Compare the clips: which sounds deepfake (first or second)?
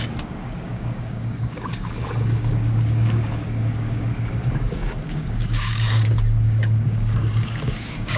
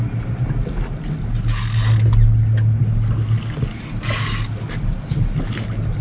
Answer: first